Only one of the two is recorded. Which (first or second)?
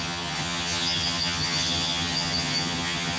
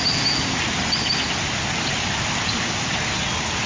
second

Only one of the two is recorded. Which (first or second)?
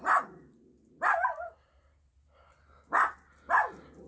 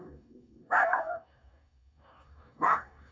first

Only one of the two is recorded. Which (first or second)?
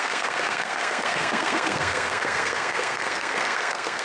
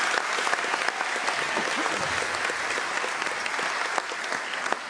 second